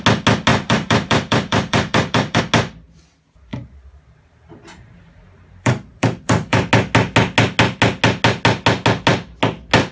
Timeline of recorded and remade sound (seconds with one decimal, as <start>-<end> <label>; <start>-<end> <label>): 0.0-0.5 recorded; 0.5-2.4 remade; 2.4-3.5 recorded; 3.5-6.7 remade; 6.7-9.9 recorded